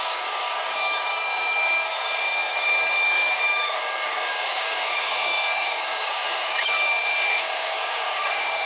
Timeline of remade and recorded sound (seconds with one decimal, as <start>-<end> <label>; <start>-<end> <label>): 0.0-8.7 remade